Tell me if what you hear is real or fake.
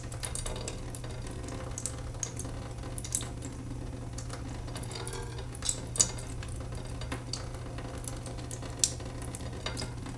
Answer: real